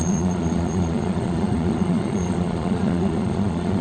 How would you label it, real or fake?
fake